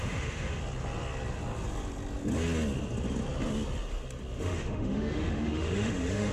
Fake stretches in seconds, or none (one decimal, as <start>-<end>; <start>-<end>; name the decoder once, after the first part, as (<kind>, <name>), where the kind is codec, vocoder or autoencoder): 0.0-0.6 (autoencoder, DAC-VAE); 4.4-6.3